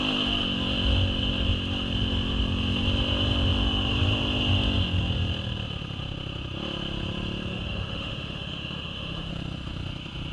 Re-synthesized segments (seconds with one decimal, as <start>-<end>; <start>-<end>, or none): 7.5-9.3